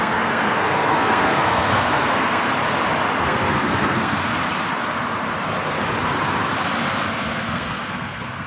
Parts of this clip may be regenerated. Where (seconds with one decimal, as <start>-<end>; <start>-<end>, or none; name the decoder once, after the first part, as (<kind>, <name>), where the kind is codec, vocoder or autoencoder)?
0.0-2.5 (codec, SNAC); 3.2-4.3; 7.1-8.5